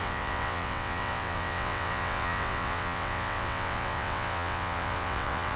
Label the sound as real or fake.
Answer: fake